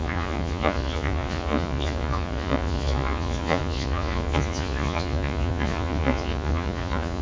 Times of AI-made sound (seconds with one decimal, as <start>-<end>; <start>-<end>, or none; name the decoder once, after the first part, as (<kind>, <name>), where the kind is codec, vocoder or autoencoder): 0.0-7.2 (vocoder, Vocos)